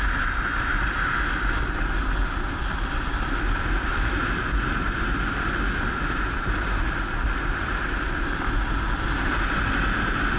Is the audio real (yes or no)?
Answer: yes